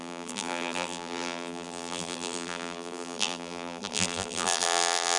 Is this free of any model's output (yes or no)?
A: no